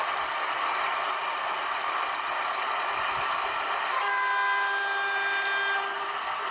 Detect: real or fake real